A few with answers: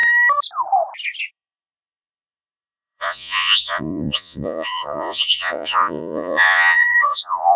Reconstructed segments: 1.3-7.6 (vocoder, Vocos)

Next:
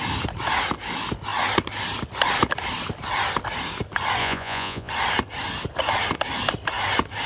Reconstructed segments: 4.2-4.9 (vocoder, Vocos)

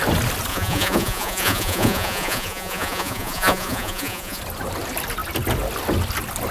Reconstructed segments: 0.5-4.4 (vocoder, Vocos)

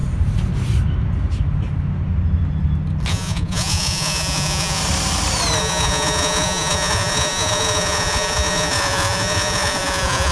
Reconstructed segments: 3.1-4.8 (vocoder, Vocos); 5.6-10.3

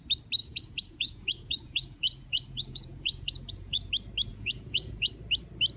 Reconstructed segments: 0.4-3.9 (vocoder, Vocos); 4.3-5.1